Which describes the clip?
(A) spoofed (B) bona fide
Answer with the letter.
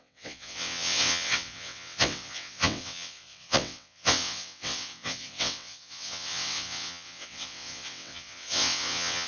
A